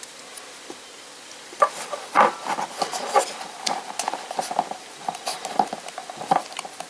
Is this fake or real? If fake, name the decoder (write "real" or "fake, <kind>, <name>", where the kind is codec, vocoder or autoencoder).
real